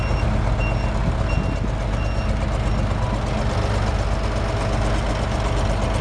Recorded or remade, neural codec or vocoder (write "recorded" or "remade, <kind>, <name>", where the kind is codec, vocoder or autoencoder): recorded